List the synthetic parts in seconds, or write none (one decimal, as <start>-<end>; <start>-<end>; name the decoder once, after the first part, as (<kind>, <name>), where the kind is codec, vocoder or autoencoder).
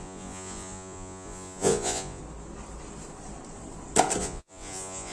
0.0-2.2 (vocoder, Vocos); 4.2-5.1